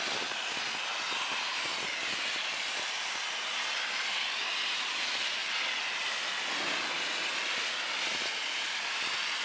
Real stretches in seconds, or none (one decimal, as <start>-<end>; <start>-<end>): 0.0-9.4